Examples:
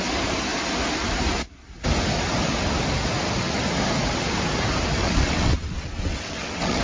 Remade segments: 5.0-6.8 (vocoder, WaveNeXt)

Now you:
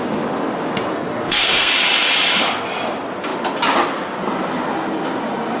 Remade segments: 0.9-1.7 (codec, SNAC)

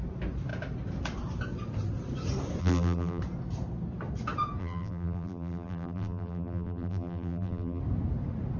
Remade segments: 2.6-3.2 (vocoder, BigVGAN v2); 4.6-7.8